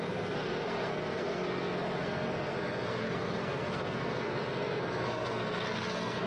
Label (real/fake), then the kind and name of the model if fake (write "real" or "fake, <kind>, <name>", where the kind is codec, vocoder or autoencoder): fake, codec, SNAC